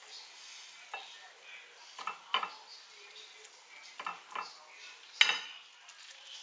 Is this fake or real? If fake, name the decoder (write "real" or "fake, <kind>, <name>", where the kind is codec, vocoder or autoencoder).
real